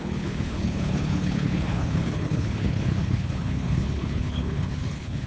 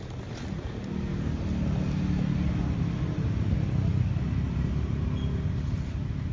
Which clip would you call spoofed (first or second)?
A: first